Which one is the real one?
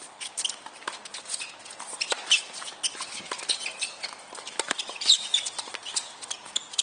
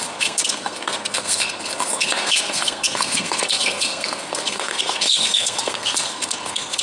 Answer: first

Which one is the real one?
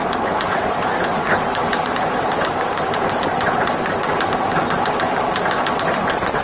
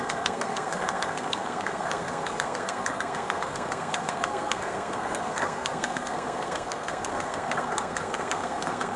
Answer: first